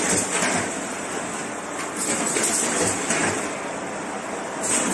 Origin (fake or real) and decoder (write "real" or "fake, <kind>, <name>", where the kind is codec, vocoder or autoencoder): real